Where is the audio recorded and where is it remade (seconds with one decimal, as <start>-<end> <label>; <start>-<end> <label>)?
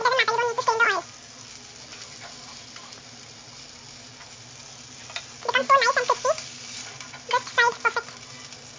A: 0.0-8.8 recorded